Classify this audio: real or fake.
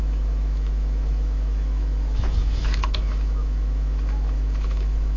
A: fake